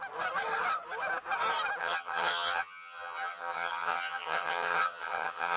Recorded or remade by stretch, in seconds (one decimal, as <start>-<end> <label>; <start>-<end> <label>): 0.0-1.8 recorded; 1.8-5.6 remade